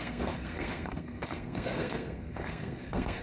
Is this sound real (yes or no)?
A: no